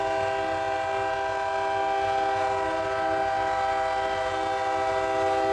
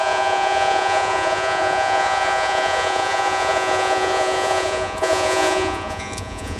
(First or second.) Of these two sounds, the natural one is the first